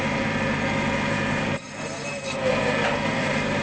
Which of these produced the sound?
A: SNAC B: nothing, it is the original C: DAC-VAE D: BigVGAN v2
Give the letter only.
D